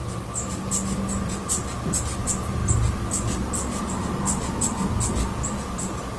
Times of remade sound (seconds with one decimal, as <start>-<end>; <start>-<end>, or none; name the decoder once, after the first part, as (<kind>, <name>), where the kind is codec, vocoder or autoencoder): none